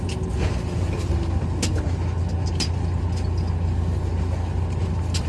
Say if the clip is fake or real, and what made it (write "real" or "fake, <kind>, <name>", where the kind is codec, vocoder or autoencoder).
real